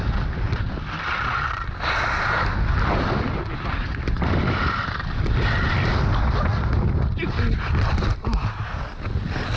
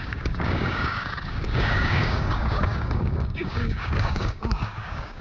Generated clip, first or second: second